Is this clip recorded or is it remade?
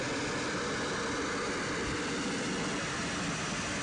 recorded